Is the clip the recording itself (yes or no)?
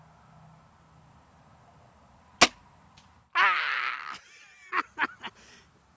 yes